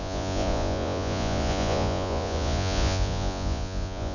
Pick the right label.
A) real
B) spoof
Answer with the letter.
B